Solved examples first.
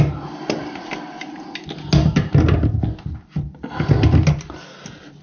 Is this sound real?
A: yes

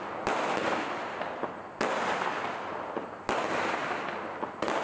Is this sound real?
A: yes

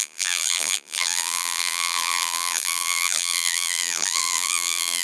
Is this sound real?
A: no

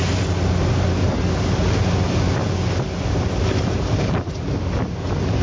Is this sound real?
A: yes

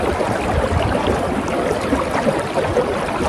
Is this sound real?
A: yes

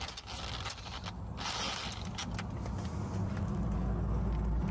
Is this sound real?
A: yes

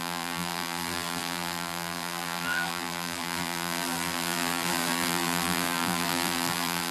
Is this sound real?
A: no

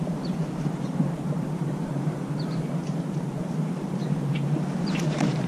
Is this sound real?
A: no